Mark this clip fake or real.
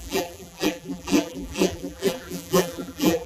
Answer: fake